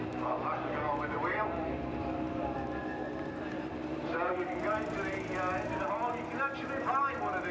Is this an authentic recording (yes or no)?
yes